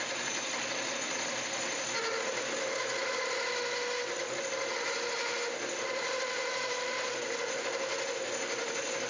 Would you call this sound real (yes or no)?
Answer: yes